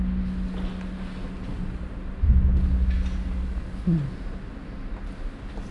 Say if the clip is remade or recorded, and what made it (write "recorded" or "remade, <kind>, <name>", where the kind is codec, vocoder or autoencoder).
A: recorded